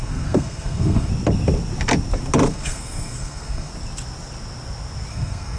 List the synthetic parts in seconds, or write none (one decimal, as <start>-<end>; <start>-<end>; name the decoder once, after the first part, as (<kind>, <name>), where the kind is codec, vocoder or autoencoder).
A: 0.0-1.1 (codec, SNAC); 2.5-3.7; 5.1-5.6